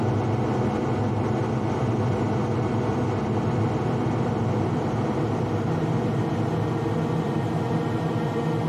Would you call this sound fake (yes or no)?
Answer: no